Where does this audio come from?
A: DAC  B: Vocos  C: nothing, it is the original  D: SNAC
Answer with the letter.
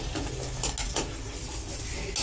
C